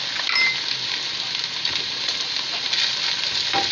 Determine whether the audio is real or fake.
real